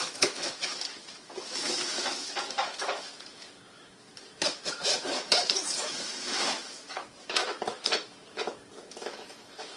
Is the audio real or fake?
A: fake